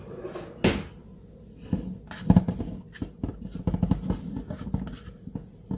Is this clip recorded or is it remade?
recorded